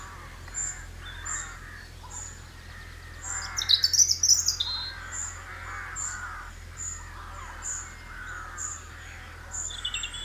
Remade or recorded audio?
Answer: recorded